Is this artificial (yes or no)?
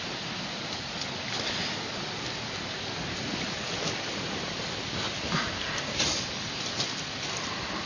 no